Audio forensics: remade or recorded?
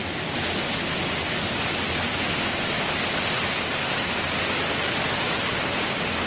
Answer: recorded